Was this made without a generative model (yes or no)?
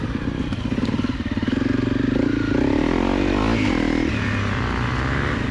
yes